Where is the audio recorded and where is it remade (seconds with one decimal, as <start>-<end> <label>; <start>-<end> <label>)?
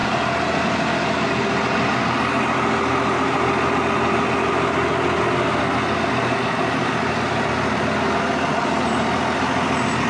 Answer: 0.0-10.1 recorded